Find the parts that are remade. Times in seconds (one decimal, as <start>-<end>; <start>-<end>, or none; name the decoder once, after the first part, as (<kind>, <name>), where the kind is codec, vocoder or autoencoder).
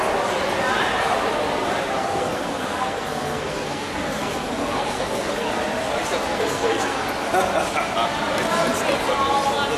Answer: 2.0-5.5 (codec, SNAC); 6.3-7.1